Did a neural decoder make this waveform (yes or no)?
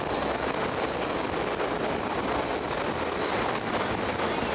no